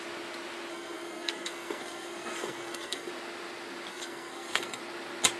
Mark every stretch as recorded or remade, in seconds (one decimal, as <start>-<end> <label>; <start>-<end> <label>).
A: 0.0-0.7 recorded; 0.7-3.1 remade; 3.1-3.9 recorded; 3.9-4.8 remade; 4.8-5.4 recorded